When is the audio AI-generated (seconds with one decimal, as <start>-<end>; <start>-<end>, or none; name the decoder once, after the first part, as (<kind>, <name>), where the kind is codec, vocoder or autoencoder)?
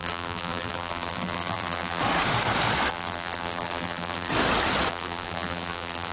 0.0-2.0 (vocoder, BigVGAN v2); 2.9-4.3; 4.9-6.1